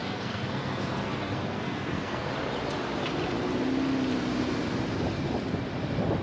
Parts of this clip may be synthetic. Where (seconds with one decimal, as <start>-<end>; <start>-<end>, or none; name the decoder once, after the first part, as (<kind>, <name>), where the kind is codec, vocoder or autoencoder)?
0.0-2.3 (codec, SNAC)

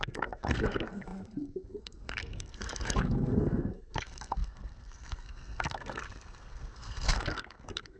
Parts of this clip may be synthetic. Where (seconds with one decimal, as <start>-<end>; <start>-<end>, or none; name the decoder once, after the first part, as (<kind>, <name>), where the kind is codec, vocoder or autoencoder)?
0.0-8.0 (codec, SNAC)

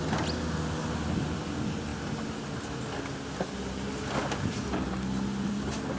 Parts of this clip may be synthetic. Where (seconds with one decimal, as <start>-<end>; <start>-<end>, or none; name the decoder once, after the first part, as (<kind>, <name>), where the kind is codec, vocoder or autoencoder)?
none

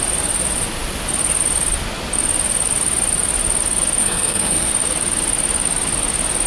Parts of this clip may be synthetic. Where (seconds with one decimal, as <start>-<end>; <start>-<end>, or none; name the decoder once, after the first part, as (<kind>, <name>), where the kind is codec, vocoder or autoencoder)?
4.0-4.7 (codec, SNAC)